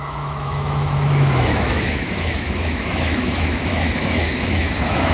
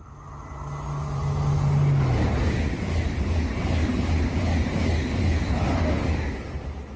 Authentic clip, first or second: second